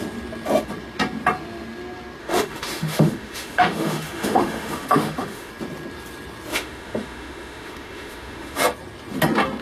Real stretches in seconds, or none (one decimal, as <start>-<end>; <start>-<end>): 0.0-2.2; 5.5-6.5; 8.6-9.6